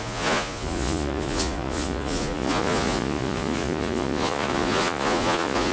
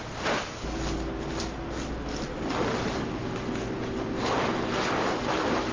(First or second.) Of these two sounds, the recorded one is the second